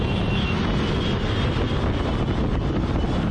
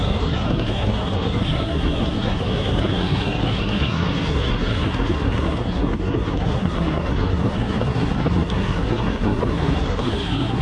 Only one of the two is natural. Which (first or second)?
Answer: first